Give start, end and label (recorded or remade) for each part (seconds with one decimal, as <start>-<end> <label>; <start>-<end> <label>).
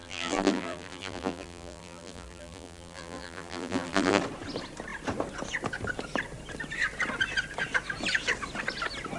0.0-4.2 remade; 4.2-9.2 recorded